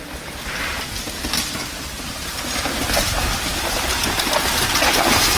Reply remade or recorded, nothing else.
recorded